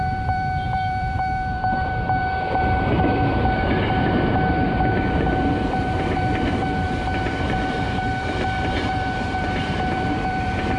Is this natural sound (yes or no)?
no